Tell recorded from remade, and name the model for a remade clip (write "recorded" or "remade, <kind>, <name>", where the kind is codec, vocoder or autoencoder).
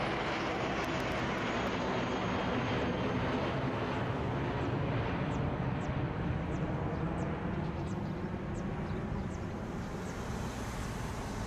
recorded